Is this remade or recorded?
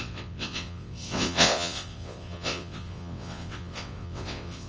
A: remade